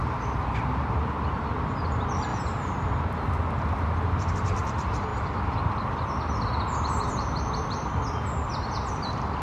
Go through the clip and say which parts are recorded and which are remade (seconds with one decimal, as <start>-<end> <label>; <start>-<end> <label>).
0.0-0.8 remade; 0.8-1.8 recorded; 1.8-2.3 remade; 2.3-4.3 recorded; 4.3-5.1 remade; 5.1-8.9 recorded; 8.9-9.4 remade